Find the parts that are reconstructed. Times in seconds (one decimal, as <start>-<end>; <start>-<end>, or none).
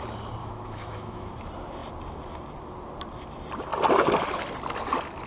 0.4-1.3